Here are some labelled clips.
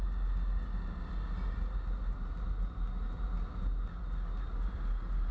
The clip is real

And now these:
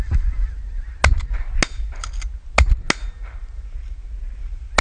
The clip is real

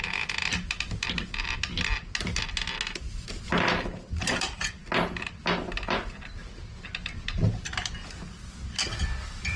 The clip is real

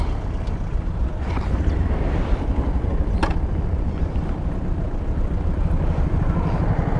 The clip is real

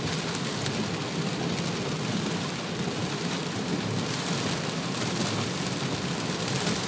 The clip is real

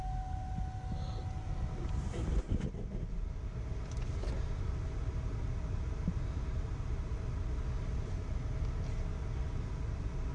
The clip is real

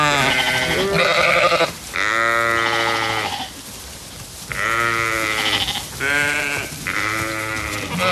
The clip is real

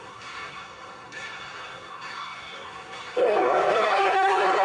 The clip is fake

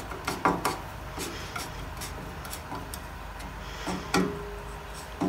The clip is real